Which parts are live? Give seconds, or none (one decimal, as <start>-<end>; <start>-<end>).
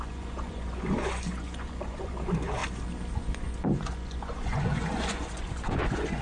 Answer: 2.6-3.1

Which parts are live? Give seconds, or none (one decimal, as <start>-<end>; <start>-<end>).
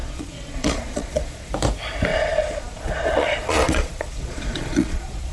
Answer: 1.5-2.1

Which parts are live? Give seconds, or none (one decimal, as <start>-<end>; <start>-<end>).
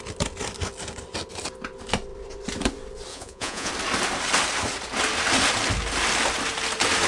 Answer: 0.0-3.1; 3.7-7.1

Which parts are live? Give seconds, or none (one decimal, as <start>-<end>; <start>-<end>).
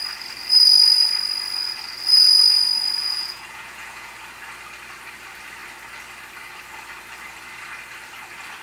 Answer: 0.0-3.0; 4.1-8.6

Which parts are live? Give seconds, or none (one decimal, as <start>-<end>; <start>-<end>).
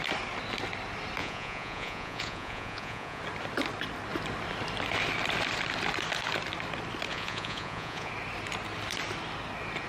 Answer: 0.0-1.2; 3.2-7.1; 8.1-9.9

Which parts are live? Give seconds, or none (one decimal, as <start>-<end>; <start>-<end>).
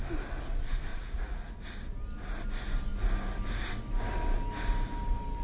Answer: 0.0-0.9; 1.7-5.4